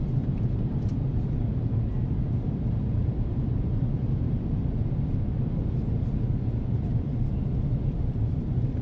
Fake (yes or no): yes